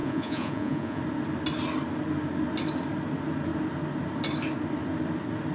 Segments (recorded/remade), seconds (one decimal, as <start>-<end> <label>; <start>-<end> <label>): 0.0-1.0 remade; 1.0-5.5 recorded